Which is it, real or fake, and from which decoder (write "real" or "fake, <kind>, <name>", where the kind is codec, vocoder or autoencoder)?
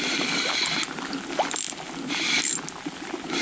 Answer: real